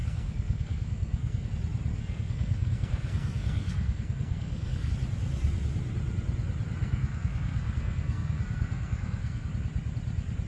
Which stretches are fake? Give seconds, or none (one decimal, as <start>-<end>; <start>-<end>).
0.0-1.5; 1.9-4.9; 6.8-9.5